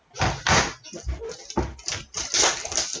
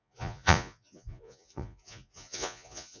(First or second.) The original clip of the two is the first